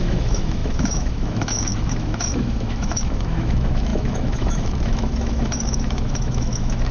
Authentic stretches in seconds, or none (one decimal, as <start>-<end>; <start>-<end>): none